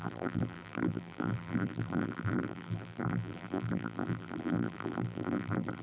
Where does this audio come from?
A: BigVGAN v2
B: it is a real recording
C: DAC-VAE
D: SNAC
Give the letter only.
A